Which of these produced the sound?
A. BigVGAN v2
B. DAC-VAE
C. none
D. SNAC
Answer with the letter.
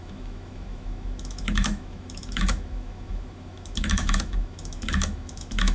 B